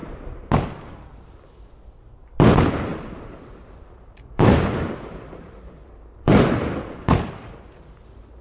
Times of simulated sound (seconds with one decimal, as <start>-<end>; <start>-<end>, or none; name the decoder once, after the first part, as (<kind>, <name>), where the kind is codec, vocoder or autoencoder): 2.9-7.5 (vocoder, BigVGAN v2)